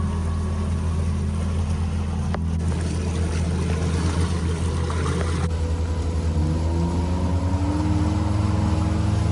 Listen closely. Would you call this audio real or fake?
real